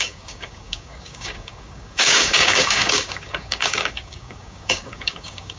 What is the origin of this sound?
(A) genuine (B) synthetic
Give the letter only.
B